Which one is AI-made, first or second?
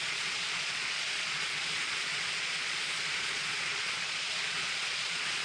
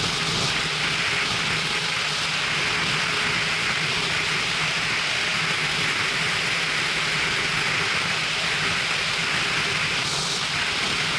first